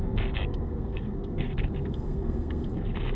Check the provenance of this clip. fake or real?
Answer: fake